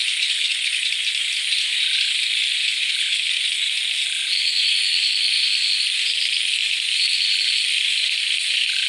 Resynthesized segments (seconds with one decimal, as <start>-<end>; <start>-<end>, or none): 0.0-0.8; 2.6-3.4